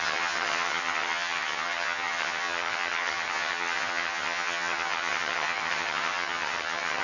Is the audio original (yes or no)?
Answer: no